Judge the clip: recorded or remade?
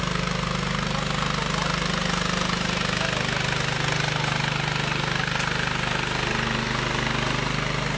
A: recorded